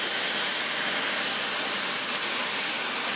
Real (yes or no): yes